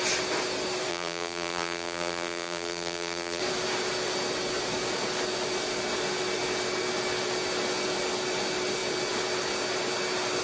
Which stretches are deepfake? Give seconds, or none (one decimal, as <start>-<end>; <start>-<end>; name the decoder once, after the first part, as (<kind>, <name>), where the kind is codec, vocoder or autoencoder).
0.9-3.4 (vocoder, BigVGAN v2)